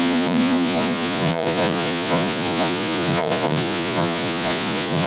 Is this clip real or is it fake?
fake